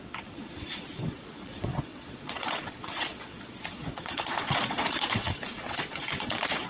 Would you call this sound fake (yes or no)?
yes